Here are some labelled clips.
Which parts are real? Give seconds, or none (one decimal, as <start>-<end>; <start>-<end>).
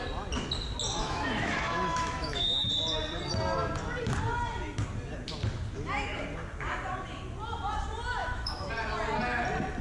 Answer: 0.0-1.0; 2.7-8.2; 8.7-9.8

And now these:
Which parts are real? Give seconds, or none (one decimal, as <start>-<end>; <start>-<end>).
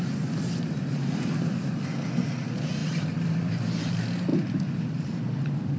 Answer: 0.0-2.8; 3.9-4.3; 5.1-5.8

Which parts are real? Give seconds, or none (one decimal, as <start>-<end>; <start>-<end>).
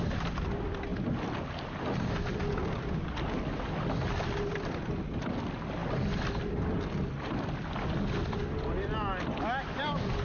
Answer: 0.0-10.2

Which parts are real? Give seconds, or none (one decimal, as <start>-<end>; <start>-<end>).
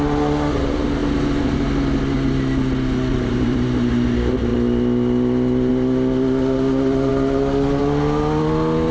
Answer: 0.0-3.1; 3.9-8.9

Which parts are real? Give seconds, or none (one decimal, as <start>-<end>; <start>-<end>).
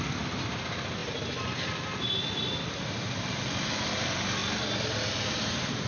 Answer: 0.0-5.9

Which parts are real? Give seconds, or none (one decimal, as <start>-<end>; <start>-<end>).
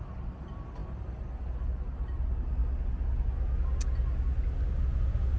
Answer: 0.0-5.4